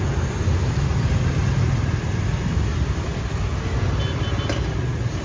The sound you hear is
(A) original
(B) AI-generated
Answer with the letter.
A